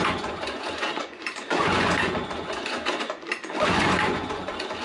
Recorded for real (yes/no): no